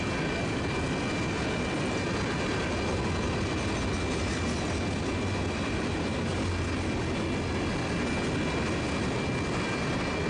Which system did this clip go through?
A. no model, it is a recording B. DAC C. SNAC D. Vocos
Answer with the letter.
A